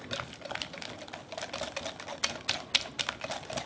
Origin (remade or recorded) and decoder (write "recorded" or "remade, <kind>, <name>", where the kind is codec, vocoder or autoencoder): recorded